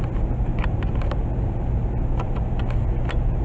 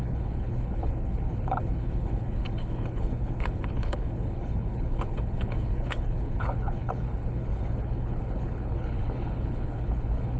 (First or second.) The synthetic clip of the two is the second